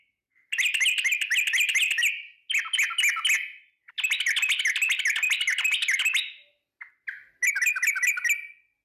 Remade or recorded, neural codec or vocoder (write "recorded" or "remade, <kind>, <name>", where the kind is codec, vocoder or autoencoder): recorded